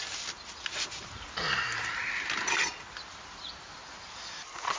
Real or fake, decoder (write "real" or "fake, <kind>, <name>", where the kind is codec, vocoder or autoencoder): real